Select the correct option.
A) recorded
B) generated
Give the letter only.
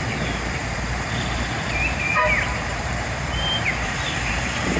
B